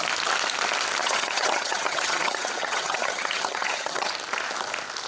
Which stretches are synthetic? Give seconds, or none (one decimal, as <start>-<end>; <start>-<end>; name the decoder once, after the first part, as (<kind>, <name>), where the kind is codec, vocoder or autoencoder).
1.0-4.1 (vocoder, HiFi-GAN)